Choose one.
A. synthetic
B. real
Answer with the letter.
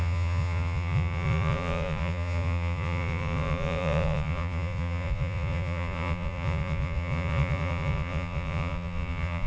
A